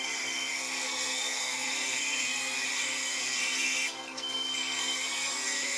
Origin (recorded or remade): remade